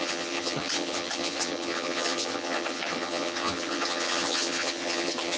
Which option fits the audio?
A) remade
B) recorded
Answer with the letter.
A